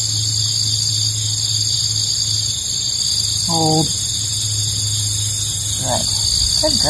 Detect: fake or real real